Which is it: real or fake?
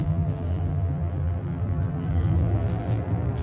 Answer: fake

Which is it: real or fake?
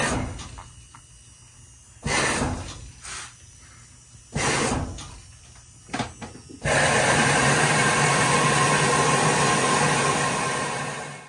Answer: real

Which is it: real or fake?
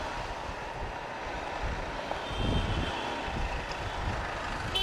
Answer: real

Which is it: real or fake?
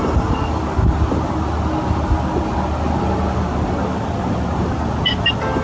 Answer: real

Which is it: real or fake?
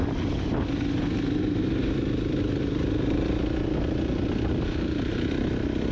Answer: real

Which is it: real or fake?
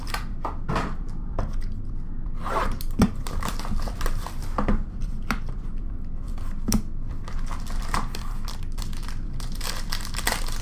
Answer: fake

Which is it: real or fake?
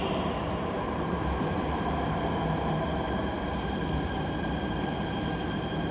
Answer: fake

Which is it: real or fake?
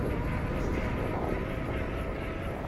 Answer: real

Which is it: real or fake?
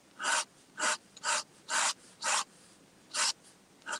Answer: real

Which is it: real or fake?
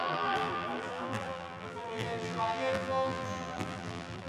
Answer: fake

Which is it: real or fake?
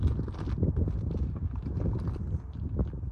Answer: real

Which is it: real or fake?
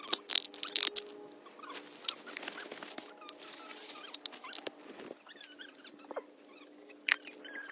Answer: real